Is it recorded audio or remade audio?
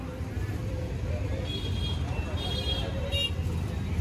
recorded